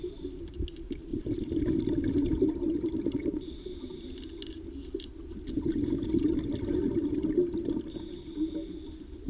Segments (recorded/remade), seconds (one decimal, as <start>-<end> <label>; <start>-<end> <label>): 0.0-1.1 recorded; 1.1-1.6 remade; 1.6-9.3 recorded